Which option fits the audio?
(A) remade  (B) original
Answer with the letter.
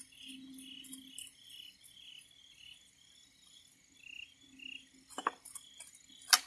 B